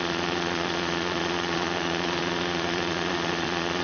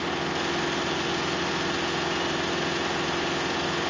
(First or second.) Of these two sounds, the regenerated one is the first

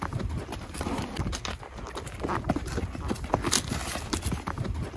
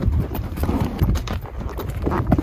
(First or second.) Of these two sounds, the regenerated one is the second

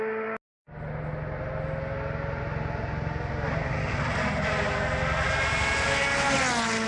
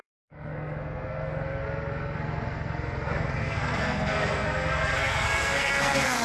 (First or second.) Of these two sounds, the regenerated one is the second